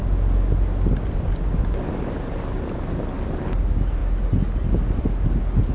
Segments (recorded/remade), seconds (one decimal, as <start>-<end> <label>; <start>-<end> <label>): 0.0-5.7 recorded